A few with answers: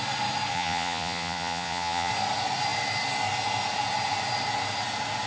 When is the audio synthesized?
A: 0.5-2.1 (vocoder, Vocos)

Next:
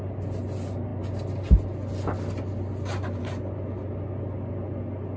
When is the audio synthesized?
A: none

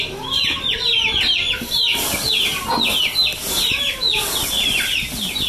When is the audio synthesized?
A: none

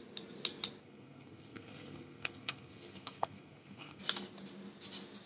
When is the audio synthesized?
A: 0.8-4.0 (codec, SNAC)